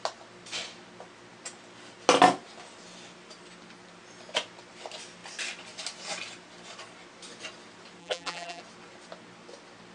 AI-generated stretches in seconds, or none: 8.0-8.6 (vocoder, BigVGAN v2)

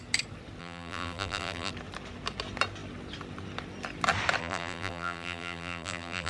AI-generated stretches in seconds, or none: 0.6-1.7 (vocoder, BigVGAN v2); 4.4-6.3

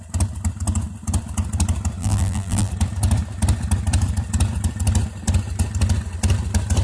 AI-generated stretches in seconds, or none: 2.0-2.7 (vocoder, BigVGAN v2)

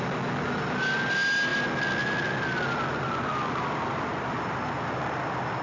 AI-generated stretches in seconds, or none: none

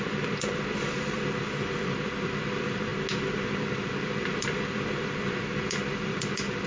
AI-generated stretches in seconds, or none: 0.0-2.9 (vocoder, BigVGAN v2); 3.6-6.7

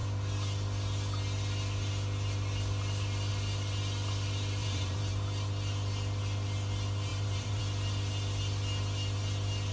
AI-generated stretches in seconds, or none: 4.6-5.1 (vocoder, BigVGAN v2); 7.1-7.6

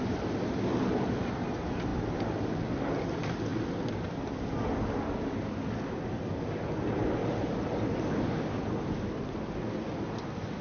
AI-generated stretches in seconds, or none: 7.2-7.9 (vocoder, BigVGAN v2)